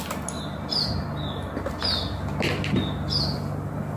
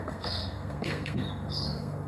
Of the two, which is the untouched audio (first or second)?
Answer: first